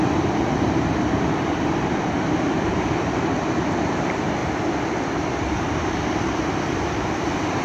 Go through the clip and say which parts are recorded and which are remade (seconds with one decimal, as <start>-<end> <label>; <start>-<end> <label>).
0.0-4.4 remade; 4.4-5.4 recorded; 5.4-7.6 remade